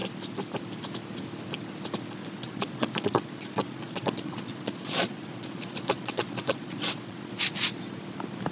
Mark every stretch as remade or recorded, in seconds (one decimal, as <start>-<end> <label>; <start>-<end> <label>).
0.0-2.2 recorded; 2.2-7.3 remade; 7.3-8.5 recorded